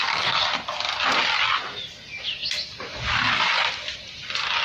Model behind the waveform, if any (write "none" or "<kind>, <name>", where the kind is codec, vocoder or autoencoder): none